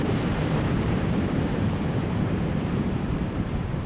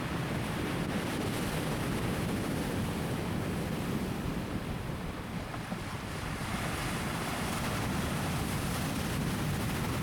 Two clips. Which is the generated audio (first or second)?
first